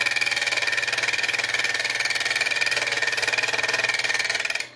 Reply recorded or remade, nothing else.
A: recorded